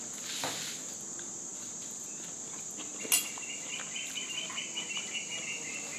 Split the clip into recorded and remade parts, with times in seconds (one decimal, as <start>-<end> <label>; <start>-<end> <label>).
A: 0.0-6.0 recorded